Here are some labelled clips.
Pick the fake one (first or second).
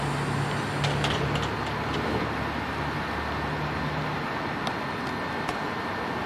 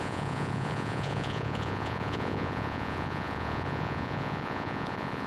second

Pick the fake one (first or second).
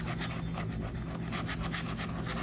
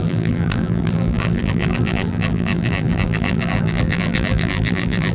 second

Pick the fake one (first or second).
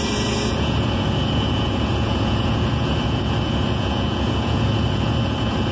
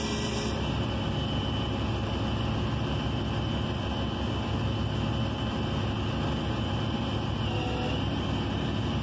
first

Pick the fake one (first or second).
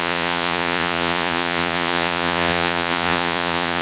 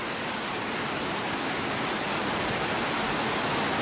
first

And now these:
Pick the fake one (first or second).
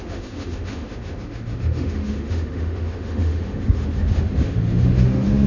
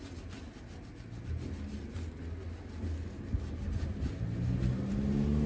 first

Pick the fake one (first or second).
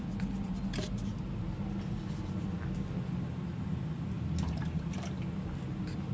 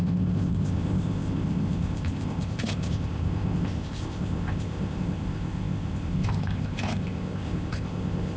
second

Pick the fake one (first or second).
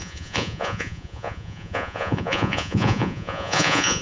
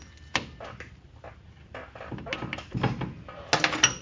first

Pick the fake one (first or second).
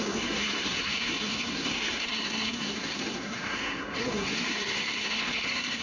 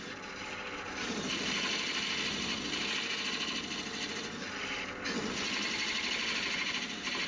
first